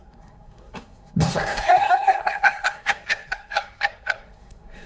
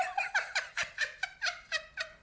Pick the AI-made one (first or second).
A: first